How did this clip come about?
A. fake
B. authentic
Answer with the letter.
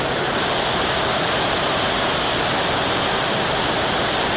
B